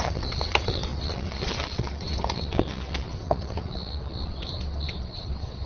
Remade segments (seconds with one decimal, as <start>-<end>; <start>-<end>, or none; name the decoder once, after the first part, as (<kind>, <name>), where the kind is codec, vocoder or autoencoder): 0.0-5.7 (vocoder, WaveNeXt)